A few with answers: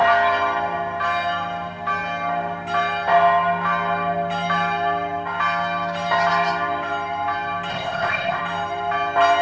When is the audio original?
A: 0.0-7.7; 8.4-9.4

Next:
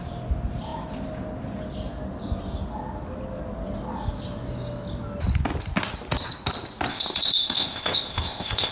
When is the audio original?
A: 0.0-6.9

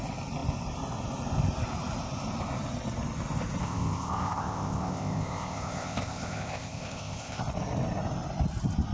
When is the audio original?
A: 0.0-3.6; 7.4-8.9

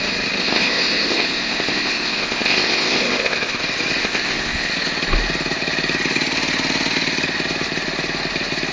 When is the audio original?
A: 0.0-0.4; 3.6-4.0; 4.7-8.7

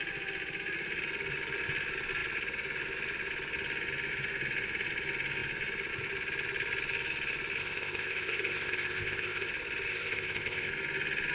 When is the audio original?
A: 0.0-7.6; 9.5-9.9; 10.7-11.3

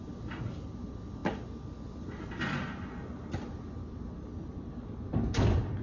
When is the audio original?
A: 0.0-5.8

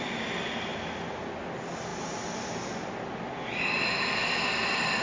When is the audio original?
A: 0.0-5.0